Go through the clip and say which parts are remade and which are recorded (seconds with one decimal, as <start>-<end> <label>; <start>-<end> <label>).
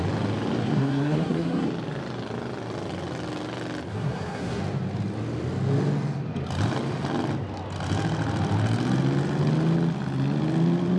0.0-0.6 recorded; 0.6-1.7 remade; 1.7-3.9 recorded; 3.9-4.6 remade; 4.6-11.0 recorded